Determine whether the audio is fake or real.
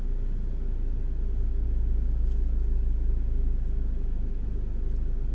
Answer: real